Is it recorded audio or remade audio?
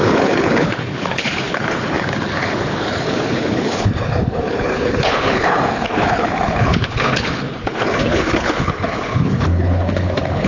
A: remade